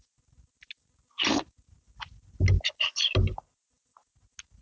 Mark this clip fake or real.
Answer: real